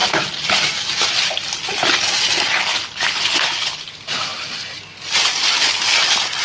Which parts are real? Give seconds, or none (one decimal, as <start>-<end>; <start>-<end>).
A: 0.0-6.4